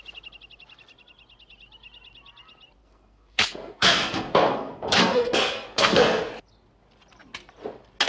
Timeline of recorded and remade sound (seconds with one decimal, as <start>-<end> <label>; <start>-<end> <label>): 0.0-2.8 recorded; 2.8-6.3 remade; 6.3-8.1 recorded